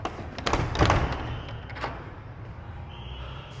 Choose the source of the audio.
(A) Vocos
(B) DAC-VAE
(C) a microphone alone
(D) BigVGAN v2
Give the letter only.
C